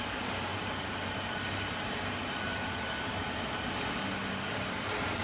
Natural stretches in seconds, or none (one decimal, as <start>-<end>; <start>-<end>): 0.0-0.5; 3.1-5.2